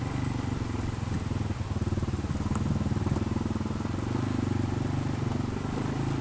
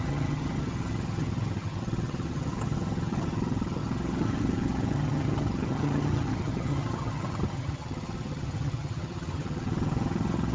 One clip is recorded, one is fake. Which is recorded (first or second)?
first